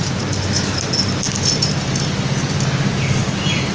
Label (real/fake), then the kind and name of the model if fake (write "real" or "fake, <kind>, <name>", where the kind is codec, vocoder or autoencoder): real